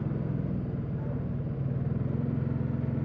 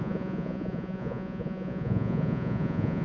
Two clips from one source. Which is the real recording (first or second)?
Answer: first